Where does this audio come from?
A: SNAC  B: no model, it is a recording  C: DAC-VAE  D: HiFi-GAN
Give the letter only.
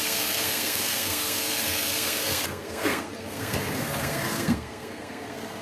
A